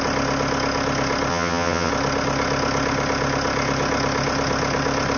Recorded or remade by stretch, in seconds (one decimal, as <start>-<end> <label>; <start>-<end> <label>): 0.0-1.3 recorded; 1.3-1.9 remade; 1.9-5.2 recorded